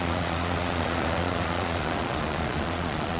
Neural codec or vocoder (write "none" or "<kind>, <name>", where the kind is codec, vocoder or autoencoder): vocoder, Vocos